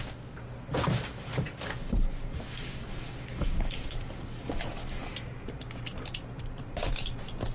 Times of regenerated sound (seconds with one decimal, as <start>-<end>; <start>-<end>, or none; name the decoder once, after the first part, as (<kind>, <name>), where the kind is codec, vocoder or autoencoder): 1.3-5.0 (codec, DAC)